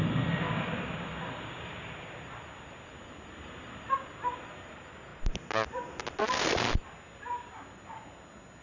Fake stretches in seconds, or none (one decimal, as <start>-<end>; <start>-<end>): none